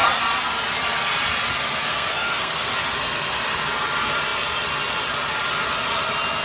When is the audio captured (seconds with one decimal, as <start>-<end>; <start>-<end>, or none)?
0.0-1.9; 2.7-6.4